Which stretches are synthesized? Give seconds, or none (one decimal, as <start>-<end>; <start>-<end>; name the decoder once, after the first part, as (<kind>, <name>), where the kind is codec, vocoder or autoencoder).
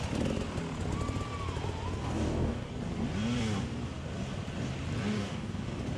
2.0-2.7 (codec, DAC); 5.1-5.6